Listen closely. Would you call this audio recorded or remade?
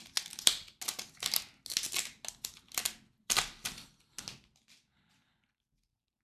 recorded